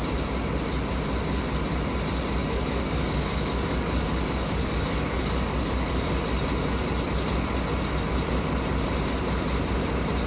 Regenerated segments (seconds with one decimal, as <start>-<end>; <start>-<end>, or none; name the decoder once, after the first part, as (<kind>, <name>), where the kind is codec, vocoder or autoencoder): 2.4-5.9 (codec, DAC)